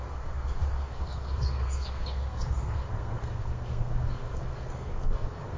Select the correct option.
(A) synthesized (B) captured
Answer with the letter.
A